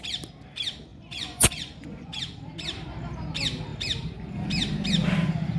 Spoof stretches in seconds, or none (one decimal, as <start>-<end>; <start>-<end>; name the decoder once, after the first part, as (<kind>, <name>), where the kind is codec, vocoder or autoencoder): 0.9-2.2 (vocoder, Vocos)